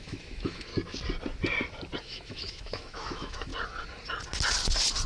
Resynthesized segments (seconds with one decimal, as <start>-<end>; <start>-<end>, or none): 0.0-0.7; 2.0-3.5